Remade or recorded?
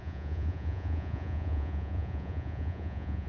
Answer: remade